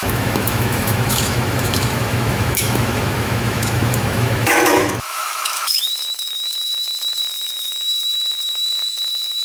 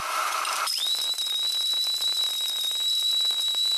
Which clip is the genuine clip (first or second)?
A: second